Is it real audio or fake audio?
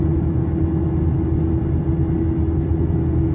real